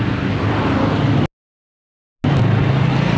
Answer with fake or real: real